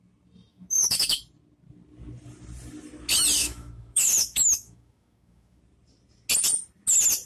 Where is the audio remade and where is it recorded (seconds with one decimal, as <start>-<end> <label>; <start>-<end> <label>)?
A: 0.0-0.5 recorded; 0.5-1.2 remade; 1.2-3.4 recorded; 3.4-5.6 remade; 5.6-7.3 recorded